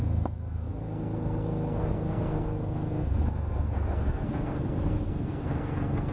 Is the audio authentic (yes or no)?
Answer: no